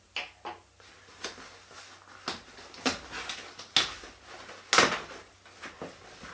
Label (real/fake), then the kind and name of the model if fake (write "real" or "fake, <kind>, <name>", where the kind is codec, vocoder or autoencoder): real